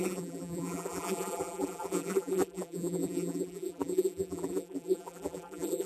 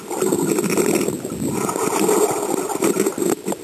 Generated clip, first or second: first